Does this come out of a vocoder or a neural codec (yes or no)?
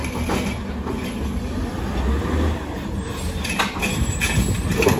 no